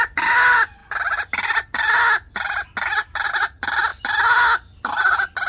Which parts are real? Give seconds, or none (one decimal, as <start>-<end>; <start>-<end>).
0.0-5.5